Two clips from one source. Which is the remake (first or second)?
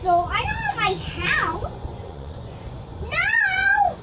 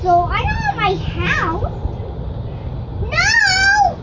first